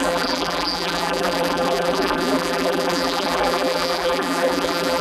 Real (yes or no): no